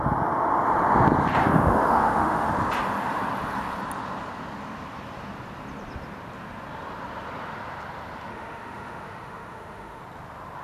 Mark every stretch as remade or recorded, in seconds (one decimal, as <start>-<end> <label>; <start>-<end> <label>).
0.0-1.4 recorded; 1.4-2.5 remade; 2.5-8.3 recorded; 8.3-10.0 remade; 10.0-10.6 recorded